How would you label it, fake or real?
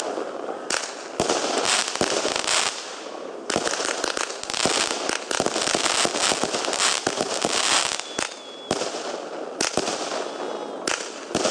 real